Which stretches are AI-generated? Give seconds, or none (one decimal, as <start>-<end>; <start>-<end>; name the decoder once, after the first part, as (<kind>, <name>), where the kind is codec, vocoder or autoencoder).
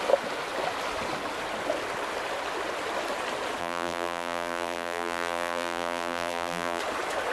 3.6-6.8 (vocoder, BigVGAN v2)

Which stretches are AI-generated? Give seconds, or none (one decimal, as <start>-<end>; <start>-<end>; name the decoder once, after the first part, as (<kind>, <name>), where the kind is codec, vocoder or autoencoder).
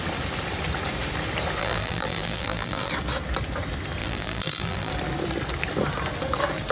1.6-2.9 (vocoder, BigVGAN v2); 4.0-4.9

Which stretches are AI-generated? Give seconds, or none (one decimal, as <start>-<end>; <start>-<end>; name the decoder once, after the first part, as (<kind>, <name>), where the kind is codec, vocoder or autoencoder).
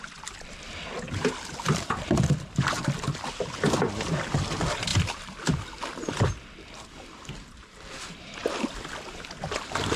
0.0-4.9 (vocoder, BigVGAN v2); 6.4-10.0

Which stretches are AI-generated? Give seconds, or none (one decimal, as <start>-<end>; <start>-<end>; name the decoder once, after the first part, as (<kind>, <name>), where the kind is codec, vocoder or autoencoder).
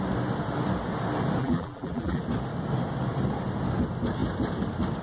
1.4-2.2 (vocoder, BigVGAN v2)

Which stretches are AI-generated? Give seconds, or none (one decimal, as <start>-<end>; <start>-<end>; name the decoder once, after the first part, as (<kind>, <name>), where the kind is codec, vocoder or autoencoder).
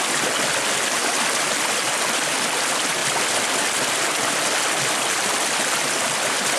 3.0-3.5 (vocoder, BigVGAN v2)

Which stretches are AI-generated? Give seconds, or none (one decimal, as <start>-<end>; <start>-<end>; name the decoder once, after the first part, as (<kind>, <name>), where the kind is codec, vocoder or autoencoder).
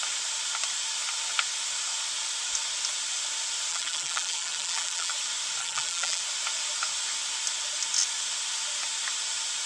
3.7-5.1 (vocoder, BigVGAN v2); 5.6-6.2